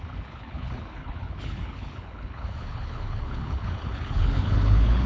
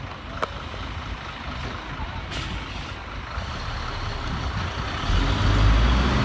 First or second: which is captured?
second